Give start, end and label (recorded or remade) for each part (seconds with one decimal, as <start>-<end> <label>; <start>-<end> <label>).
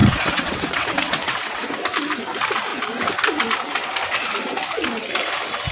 0.0-1.6 remade; 1.6-5.7 recorded